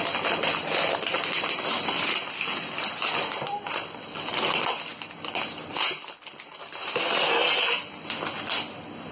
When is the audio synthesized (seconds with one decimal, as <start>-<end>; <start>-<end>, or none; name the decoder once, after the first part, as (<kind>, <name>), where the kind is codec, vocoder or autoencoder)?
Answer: none